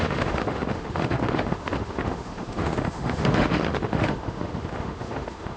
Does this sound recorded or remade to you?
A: remade